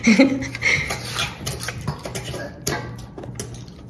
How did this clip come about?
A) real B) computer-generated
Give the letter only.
A